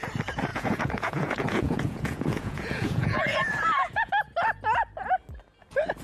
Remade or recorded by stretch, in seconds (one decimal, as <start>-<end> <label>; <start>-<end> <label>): 0.0-0.5 recorded; 0.5-4.1 remade; 4.1-6.0 recorded